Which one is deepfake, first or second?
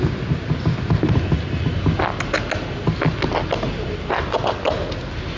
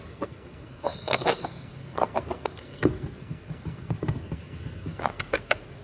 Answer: second